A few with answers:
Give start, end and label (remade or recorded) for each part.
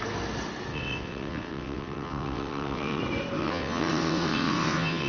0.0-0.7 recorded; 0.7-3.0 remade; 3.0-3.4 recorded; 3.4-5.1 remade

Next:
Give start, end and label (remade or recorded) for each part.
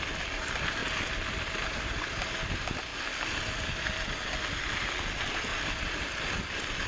0.0-0.8 recorded; 0.8-2.2 remade; 2.2-6.9 recorded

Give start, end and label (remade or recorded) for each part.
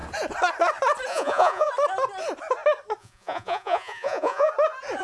0.0-1.1 recorded; 1.1-1.7 remade; 1.7-3.0 recorded; 3.0-4.5 remade; 4.5-5.0 recorded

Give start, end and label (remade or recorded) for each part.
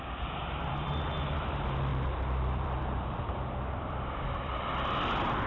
0.0-0.4 recorded; 0.4-1.1 remade; 1.1-1.9 recorded; 1.9-5.5 remade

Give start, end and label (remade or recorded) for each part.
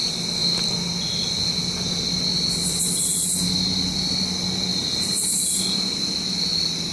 0.0-6.9 recorded